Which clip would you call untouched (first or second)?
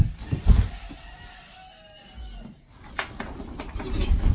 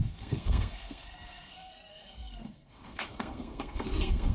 first